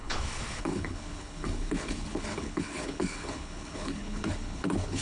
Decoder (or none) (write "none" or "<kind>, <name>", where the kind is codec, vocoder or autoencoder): codec, HILCodec